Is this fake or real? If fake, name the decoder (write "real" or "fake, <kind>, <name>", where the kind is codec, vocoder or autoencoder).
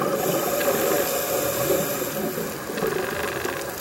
real